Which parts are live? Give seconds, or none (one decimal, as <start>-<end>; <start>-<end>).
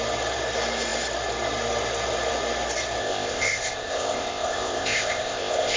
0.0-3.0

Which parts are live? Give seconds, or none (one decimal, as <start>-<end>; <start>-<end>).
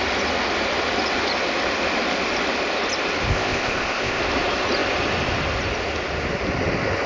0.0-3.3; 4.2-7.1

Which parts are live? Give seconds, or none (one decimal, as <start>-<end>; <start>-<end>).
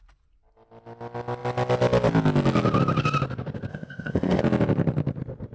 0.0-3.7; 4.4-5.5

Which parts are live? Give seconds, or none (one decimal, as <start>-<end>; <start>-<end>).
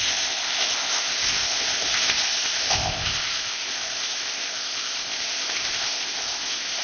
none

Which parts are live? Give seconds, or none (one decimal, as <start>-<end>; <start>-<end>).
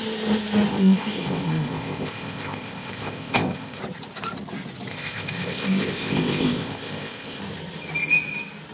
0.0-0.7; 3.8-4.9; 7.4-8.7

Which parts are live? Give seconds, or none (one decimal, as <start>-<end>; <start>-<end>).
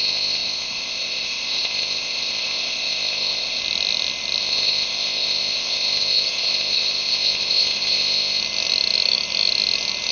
3.6-4.4; 8.4-10.1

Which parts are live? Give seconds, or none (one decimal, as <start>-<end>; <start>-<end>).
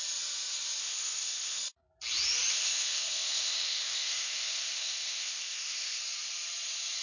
0.0-0.8; 1.6-2.5; 6.0-7.0